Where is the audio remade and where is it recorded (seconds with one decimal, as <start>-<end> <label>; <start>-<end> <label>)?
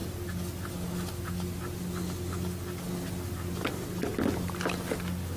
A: 0.0-5.4 recorded